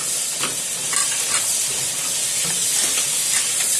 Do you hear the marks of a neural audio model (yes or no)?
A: no